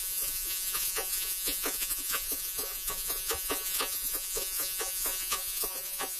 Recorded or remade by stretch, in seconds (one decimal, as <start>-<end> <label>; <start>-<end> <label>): 0.0-6.2 remade

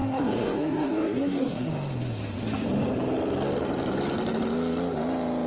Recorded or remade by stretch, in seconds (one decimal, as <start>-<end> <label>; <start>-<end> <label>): 0.0-1.7 remade; 1.7-5.5 recorded

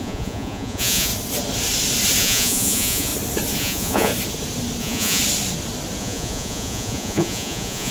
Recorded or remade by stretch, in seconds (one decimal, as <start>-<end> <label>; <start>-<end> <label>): 0.0-1.1 remade; 1.1-2.2 recorded; 2.2-3.1 remade; 3.1-3.6 recorded; 3.6-4.1 remade; 4.1-4.8 recorded; 4.8-5.2 remade; 5.2-6.0 recorded; 6.0-7.9 remade

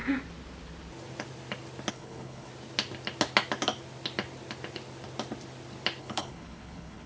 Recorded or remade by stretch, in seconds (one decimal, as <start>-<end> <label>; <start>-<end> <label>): 0.0-1.9 recorded; 1.9-2.5 remade; 2.5-6.0 recorded; 6.0-7.1 remade

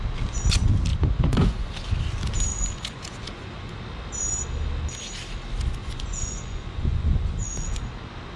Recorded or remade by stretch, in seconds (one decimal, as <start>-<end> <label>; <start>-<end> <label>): 0.0-0.9 recorded; 0.9-1.7 remade; 1.7-2.5 recorded; 2.5-3.8 remade; 3.8-5.8 recorded; 5.8-7.8 remade; 7.8-8.4 recorded

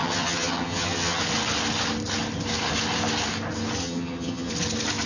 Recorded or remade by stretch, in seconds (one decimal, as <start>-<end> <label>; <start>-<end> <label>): 0.0-1.2 remade; 1.2-3.8 recorded; 3.8-4.5 remade; 4.5-5.1 recorded

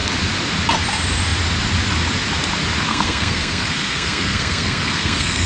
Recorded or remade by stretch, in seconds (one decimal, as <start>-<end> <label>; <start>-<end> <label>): 0.0-2.9 recorded; 2.9-5.5 remade